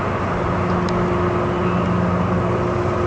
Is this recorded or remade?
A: recorded